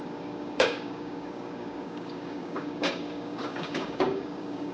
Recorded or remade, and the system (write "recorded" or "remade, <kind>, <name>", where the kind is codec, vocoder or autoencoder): remade, codec, DAC